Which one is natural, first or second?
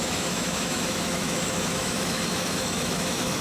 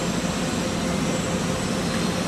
second